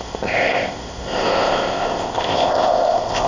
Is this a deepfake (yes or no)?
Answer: yes